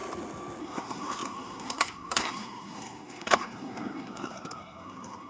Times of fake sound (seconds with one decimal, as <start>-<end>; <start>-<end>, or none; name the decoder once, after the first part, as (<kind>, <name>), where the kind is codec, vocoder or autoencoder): 0.6-5.3 (codec, SNAC)